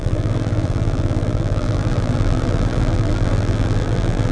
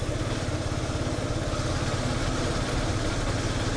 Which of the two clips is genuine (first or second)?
second